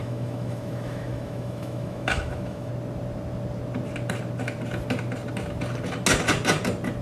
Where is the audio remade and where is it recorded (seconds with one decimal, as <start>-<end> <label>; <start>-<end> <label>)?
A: 0.0-2.7 remade; 2.7-7.0 recorded